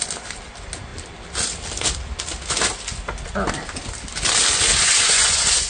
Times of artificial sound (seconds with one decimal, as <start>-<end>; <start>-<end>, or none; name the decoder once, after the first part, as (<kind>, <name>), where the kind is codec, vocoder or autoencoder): 4.7-5.7 (vocoder, Vocos)